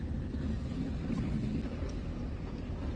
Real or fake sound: real